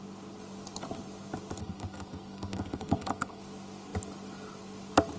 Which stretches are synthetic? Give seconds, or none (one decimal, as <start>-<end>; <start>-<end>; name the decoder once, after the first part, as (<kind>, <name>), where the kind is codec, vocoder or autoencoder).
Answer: 1.6-3.4 (codec, SNAC)